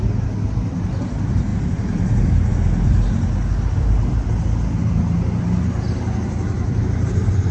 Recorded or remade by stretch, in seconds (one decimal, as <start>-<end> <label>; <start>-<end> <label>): 0.0-7.5 recorded